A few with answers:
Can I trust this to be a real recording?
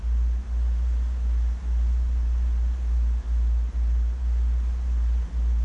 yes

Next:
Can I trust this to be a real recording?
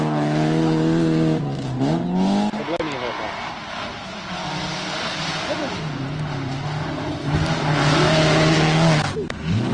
yes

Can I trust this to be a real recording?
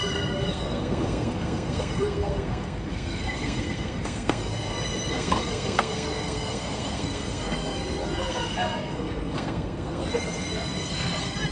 no